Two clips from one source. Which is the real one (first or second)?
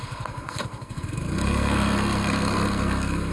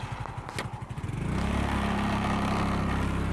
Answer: second